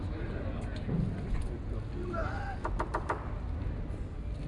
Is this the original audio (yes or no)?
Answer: yes